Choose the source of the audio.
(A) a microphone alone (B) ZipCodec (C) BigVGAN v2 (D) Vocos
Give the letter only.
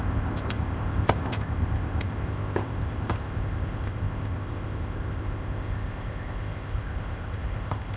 B